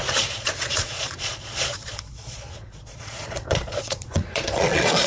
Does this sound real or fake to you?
fake